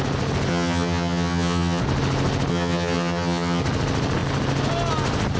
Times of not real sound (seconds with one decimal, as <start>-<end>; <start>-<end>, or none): 0.5-1.8; 2.5-3.6